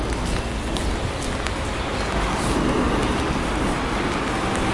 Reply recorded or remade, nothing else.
recorded